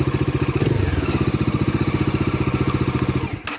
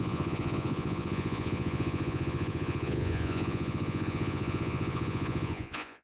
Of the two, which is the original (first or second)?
first